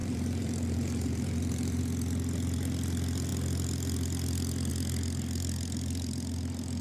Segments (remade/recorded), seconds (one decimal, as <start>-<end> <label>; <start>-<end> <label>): 0.0-1.8 remade; 1.8-6.8 recorded